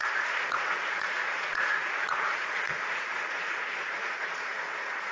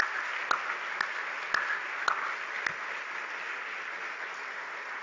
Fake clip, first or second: first